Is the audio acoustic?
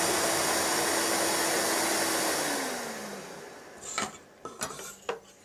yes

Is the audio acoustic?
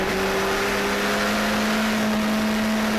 yes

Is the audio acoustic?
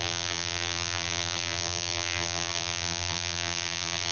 no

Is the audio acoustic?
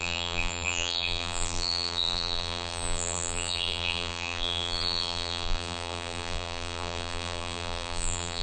no